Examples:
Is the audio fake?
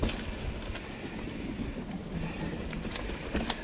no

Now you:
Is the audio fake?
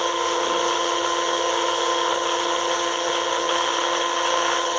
yes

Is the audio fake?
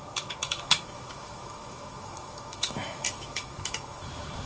yes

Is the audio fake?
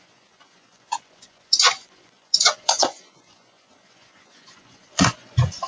yes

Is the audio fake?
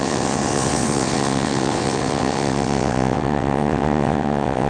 yes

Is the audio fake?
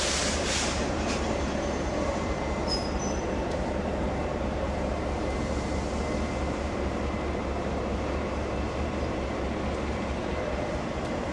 yes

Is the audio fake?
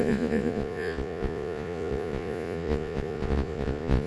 yes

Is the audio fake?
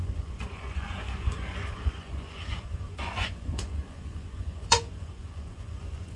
yes